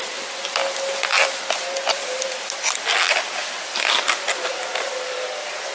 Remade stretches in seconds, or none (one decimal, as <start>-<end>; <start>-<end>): none